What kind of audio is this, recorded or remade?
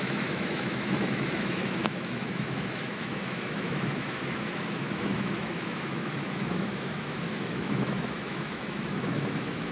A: remade